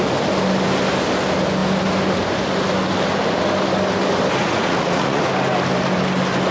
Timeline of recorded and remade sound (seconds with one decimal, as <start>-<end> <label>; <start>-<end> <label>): 0.0-4.4 recorded; 4.4-5.2 remade; 5.2-6.5 recorded